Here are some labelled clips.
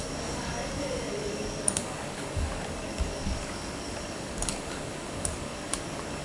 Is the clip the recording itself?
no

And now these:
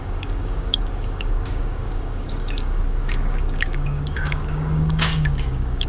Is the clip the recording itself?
no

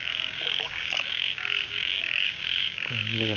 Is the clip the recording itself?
no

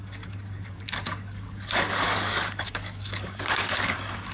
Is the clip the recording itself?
no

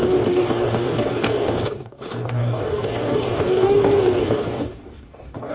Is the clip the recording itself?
no